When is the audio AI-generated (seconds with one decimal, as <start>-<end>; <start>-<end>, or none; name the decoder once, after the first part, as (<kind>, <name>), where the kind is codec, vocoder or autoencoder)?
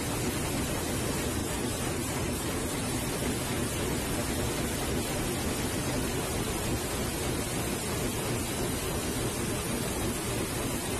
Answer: 1.4-2.9 (vocoder, BigVGAN v2)